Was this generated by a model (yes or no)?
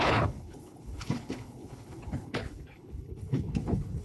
yes